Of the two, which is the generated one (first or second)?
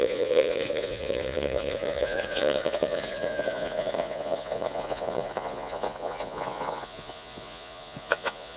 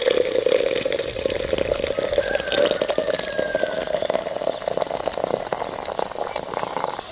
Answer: first